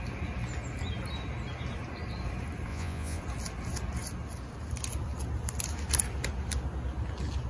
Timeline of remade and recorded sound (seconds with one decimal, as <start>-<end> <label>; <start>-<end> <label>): 0.0-2.7 recorded; 2.7-3.2 remade; 3.2-7.5 recorded